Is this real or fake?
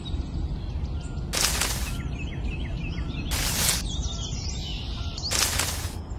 real